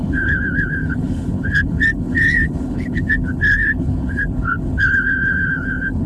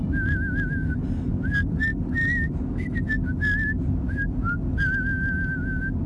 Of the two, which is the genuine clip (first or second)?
second